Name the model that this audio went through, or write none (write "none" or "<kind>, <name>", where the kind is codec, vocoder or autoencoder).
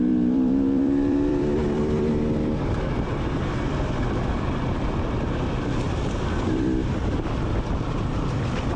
vocoder, BigVGAN v2